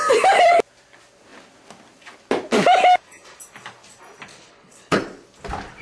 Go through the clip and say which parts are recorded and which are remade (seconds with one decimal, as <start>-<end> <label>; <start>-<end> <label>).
0.0-4.3 recorded; 4.3-5.0 remade; 5.0-5.8 recorded